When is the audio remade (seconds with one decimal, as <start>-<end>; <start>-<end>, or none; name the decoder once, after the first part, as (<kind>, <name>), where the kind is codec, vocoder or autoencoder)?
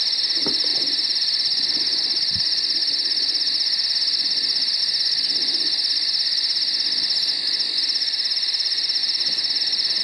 none